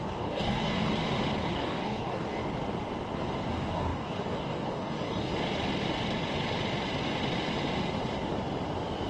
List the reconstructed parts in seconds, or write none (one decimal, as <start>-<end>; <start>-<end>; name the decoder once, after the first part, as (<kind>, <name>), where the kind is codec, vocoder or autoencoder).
0.0-0.9 (codec, DAC); 1.5-2.4; 3.5-5.3